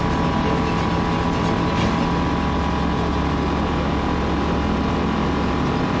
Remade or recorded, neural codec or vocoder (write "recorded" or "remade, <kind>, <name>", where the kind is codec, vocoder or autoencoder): recorded